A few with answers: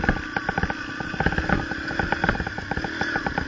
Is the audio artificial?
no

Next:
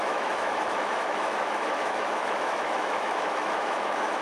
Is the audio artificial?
yes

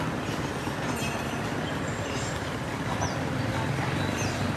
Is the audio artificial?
yes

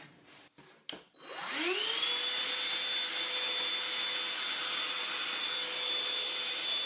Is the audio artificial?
no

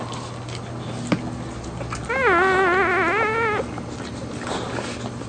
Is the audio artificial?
no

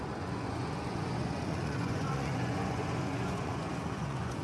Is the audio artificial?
yes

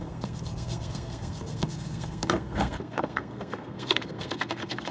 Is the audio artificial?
yes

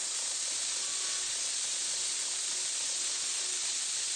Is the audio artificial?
no